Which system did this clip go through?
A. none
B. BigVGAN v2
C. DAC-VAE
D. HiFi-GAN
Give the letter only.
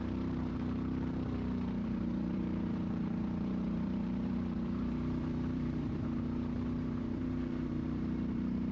B